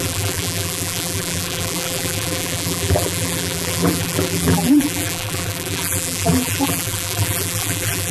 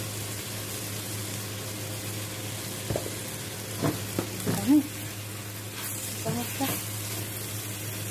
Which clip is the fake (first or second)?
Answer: first